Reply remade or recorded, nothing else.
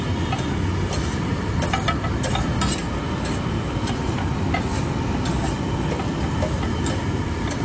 recorded